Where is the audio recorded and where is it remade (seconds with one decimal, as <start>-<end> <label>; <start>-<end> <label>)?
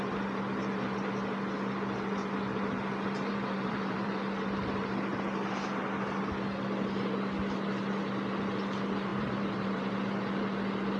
0.0-3.3 recorded; 3.3-4.1 remade; 4.1-9.1 recorded; 9.1-9.9 remade; 9.9-11.0 recorded